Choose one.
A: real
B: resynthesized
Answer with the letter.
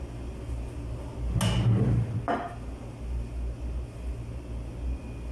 A